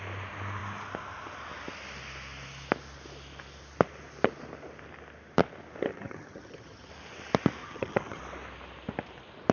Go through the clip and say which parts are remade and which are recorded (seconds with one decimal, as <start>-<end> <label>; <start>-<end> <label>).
0.0-5.9 recorded; 5.9-6.9 remade; 6.9-7.6 recorded; 7.6-8.2 remade; 8.2-9.5 recorded